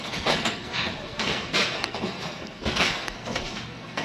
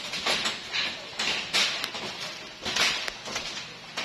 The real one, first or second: second